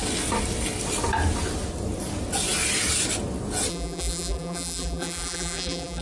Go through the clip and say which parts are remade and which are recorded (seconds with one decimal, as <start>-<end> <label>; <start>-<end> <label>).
0.0-3.7 recorded; 3.7-6.0 remade